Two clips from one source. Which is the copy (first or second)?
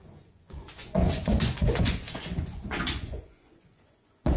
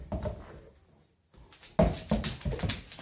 first